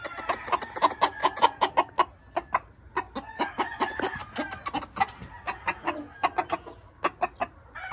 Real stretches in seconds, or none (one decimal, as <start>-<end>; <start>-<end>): 0.0-1.2; 1.7-7.9